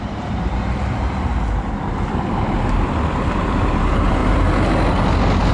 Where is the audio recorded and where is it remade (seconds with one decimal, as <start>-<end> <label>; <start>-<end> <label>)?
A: 0.0-1.3 remade; 1.3-3.4 recorded; 3.4-4.2 remade; 4.2-5.5 recorded